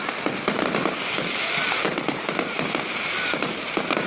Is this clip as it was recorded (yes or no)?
yes